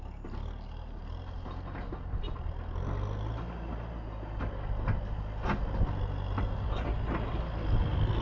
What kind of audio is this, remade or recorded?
recorded